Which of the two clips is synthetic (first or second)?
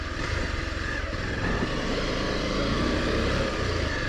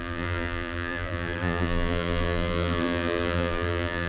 second